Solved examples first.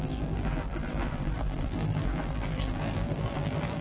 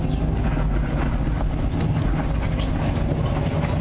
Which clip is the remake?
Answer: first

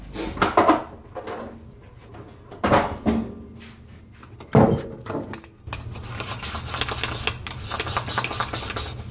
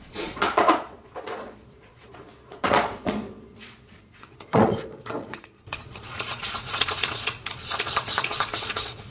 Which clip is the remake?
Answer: second